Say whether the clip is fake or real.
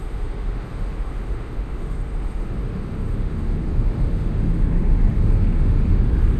fake